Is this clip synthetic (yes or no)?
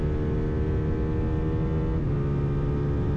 no